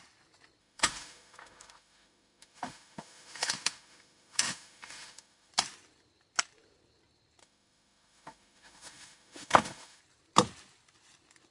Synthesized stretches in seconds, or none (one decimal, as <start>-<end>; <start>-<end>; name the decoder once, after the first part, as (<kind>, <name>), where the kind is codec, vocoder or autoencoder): 0.6-5.5 (autoencoder, DAC-VAE); 7.4-10.0